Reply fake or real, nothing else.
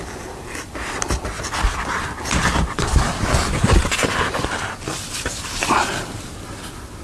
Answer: real